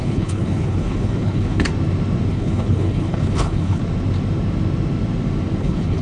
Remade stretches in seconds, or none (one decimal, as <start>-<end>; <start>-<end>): 0.0-1.7; 2.3-3.8; 5.6-6.0